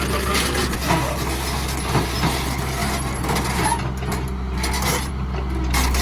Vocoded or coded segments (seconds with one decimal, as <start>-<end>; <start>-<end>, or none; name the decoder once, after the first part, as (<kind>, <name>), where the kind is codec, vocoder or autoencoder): none